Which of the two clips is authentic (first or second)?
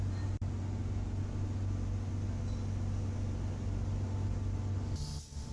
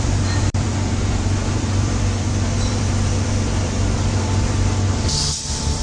first